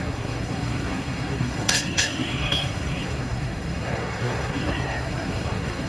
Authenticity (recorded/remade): remade